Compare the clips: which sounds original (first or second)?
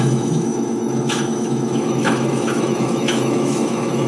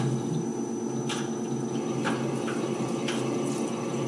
second